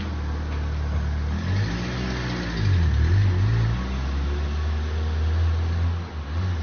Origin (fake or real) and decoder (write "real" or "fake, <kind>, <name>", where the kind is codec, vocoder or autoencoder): real